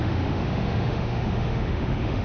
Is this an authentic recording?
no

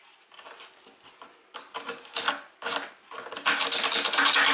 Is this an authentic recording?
yes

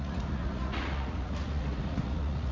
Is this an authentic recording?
no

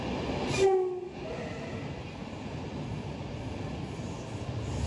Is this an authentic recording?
yes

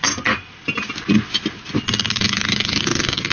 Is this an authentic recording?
yes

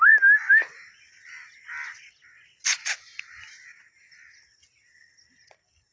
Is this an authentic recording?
yes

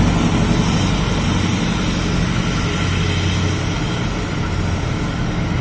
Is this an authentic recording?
yes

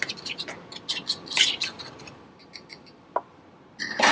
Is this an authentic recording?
yes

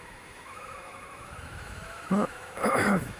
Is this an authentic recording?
no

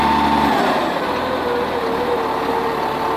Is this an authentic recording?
yes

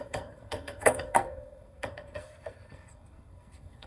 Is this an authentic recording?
no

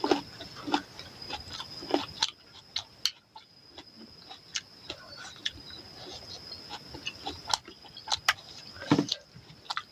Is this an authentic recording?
yes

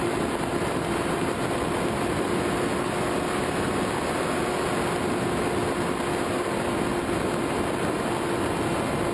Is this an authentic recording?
yes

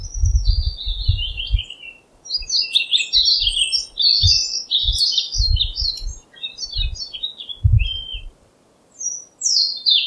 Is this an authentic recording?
yes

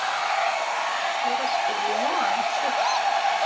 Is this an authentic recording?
yes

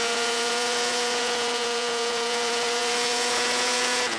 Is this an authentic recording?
no